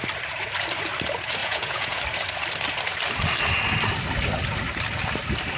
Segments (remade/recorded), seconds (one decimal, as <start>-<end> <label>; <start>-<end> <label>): 0.0-1.4 recorded; 1.4-2.0 remade; 2.0-5.6 recorded